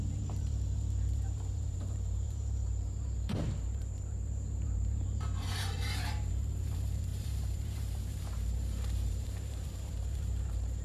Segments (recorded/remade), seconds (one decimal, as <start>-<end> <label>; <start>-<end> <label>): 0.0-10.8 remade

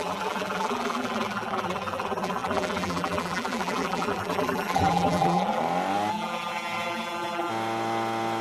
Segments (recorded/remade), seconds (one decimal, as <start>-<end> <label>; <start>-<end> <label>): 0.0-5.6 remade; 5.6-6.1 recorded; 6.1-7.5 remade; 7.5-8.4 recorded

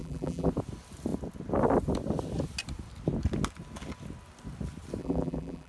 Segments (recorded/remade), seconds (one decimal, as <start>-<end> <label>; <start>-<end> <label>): 0.0-0.5 remade; 0.5-5.0 recorded; 5.0-5.7 remade

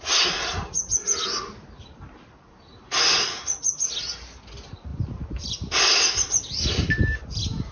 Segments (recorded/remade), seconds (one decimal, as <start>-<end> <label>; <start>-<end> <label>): 0.0-4.9 recorded; 4.9-7.7 remade

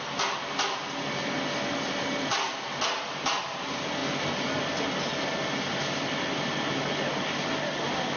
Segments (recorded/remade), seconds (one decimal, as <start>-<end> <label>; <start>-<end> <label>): 0.0-2.3 recorded; 2.3-3.4 remade; 3.4-8.2 recorded